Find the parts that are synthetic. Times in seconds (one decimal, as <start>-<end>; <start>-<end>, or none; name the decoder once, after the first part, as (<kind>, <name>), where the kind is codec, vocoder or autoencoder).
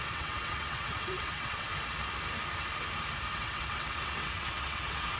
0.0-1.7 (vocoder, WaveNeXt); 3.3-5.2